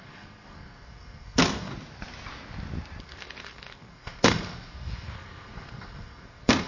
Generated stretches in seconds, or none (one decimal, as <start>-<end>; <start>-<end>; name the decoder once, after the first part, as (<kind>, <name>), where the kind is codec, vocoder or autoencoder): 0.0-1.7 (codec, SNAC); 3.0-6.7